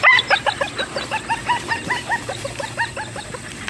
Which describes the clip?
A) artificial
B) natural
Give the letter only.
B